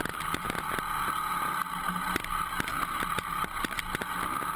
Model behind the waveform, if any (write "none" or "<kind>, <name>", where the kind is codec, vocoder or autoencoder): none